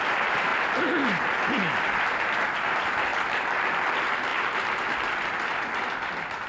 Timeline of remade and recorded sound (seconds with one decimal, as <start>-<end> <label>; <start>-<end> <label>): 0.0-6.5 recorded